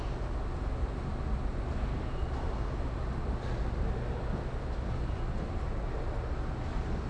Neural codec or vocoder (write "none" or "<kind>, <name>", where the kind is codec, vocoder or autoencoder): none